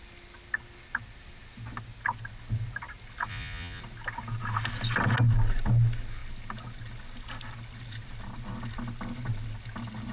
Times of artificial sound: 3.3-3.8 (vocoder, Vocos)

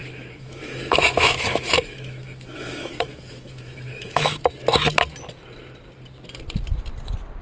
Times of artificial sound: 0.0-4.4 (autoencoder, DAC-VAE)

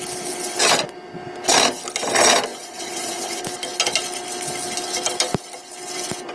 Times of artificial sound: 2.5-3.4 (vocoder, Vocos)

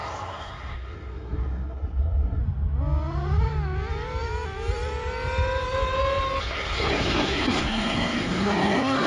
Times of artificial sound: 0.0-2.4 (codec, SNAC); 6.4-9.1

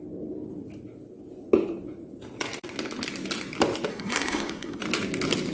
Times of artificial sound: 3.9-4.8 (codec, SNAC)